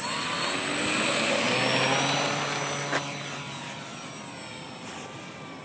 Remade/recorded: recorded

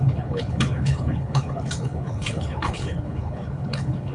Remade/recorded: remade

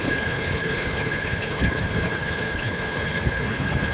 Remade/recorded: remade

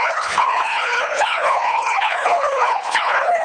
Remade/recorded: remade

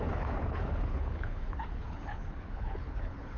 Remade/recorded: remade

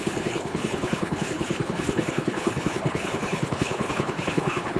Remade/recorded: remade